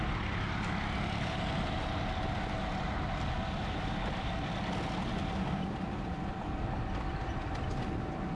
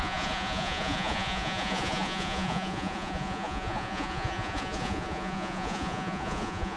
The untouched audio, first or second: first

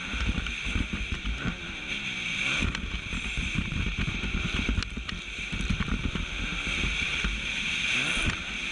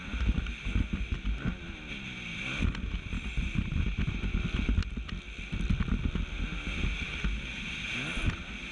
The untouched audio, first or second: second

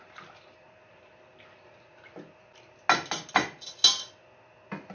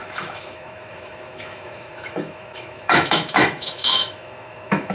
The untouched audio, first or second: first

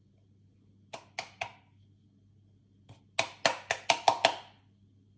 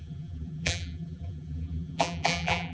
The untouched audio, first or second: first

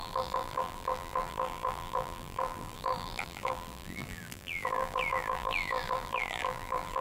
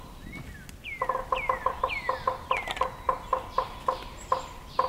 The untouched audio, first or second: second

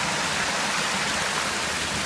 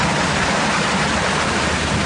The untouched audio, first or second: first